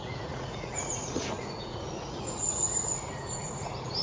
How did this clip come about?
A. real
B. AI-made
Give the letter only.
B